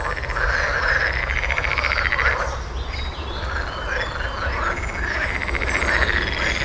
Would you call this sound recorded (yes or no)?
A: yes